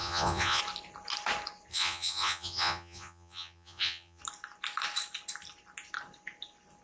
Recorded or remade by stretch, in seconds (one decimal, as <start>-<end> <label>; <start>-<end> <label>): 0.0-0.6 remade; 0.6-1.7 recorded; 1.7-4.2 remade; 4.2-6.8 recorded